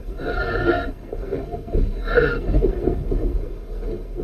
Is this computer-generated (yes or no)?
yes